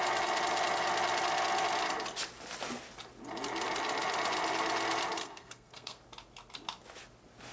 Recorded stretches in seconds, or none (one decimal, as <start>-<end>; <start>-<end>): 0.0-5.2; 6.0-7.5